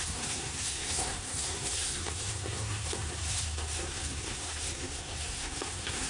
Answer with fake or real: fake